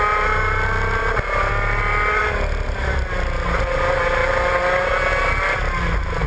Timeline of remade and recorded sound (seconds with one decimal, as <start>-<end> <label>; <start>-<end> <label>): 0.0-1.0 recorded; 1.0-1.5 remade; 1.5-6.3 recorded